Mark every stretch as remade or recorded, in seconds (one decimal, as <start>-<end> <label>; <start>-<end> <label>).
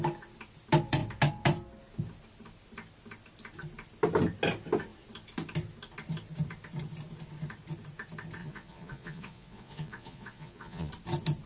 0.0-8.4 recorded; 8.4-10.9 remade; 10.9-11.5 recorded